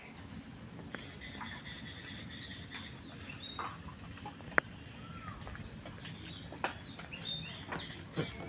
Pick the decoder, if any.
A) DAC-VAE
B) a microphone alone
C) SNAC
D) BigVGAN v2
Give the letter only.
B